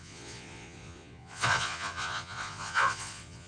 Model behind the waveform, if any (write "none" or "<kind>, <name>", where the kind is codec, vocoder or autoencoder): vocoder, Vocos